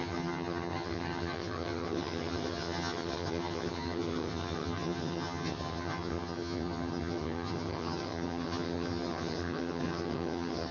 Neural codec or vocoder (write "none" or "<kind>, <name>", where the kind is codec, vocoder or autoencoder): vocoder, HiFi-GAN